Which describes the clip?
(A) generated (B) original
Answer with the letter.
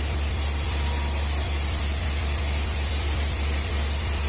A